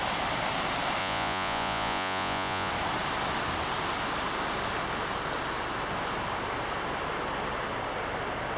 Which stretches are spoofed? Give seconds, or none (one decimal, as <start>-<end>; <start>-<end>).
1.0-2.7